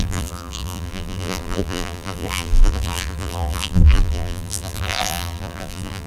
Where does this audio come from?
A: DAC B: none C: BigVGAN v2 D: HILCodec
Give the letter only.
C